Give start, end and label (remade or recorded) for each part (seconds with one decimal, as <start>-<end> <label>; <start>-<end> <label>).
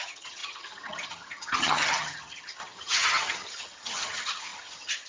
0.0-5.1 remade